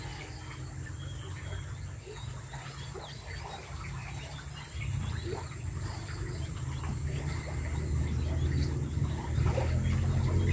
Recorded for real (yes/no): yes